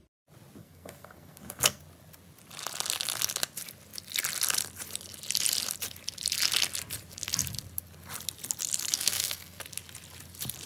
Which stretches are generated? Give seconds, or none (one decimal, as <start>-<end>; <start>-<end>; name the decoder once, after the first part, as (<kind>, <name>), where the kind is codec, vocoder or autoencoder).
0.6-1.8 (codec, SNAC); 8.9-9.6